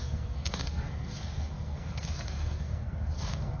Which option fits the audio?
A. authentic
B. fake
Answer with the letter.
B